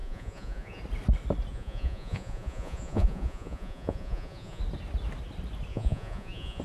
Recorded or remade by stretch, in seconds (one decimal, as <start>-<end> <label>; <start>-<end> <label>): 0.0-0.8 remade; 0.8-1.5 recorded; 1.5-4.6 remade; 4.6-5.7 recorded; 5.7-6.6 remade